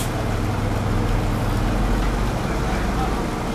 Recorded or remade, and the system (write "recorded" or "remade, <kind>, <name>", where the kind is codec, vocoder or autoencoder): recorded